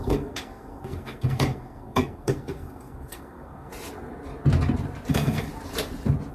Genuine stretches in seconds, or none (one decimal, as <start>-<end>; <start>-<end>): 3.7-5.1; 5.5-6.3